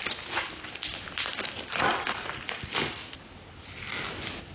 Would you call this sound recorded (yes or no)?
yes